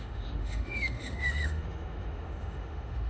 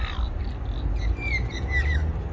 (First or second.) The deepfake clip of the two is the first